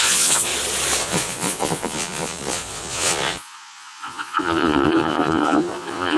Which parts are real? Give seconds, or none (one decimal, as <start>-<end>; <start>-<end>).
0.5-1.0